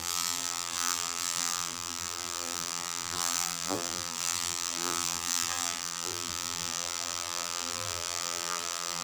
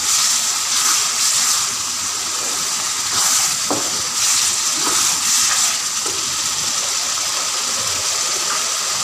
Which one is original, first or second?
second